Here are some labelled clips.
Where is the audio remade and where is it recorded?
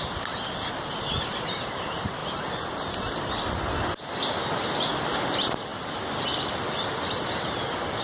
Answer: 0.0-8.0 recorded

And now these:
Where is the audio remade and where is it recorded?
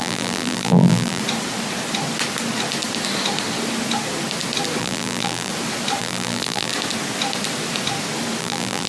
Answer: 0.0-1.2 remade; 1.2-4.8 recorded; 4.8-5.5 remade; 5.5-6.0 recorded; 6.0-6.7 remade; 6.7-8.4 recorded; 8.4-8.9 remade